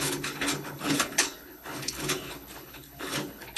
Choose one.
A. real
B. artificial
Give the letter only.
B